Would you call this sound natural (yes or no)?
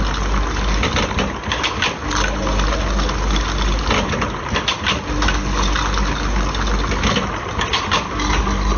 yes